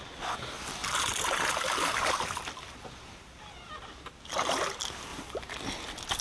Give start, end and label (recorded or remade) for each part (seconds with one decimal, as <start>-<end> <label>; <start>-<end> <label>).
0.0-6.2 recorded